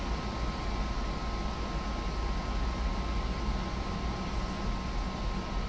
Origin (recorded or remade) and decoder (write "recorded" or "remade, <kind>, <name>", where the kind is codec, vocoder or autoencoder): recorded